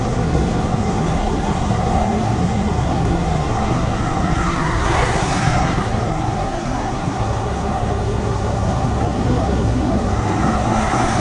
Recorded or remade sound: remade